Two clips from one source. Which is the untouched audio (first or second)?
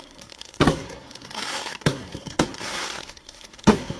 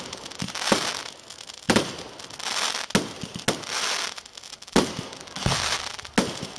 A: second